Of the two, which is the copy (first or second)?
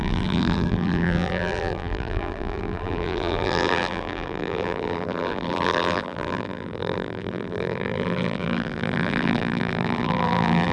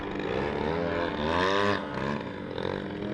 first